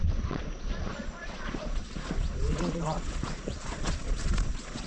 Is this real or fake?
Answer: fake